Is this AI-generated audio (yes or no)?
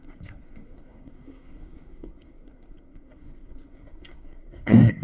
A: yes